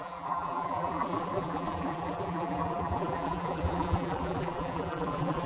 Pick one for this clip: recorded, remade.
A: remade